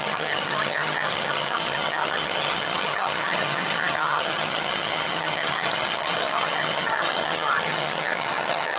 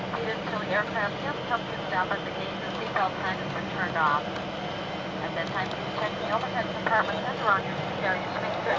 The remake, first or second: first